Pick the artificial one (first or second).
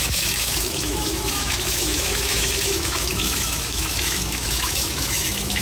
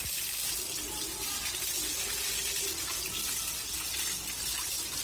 first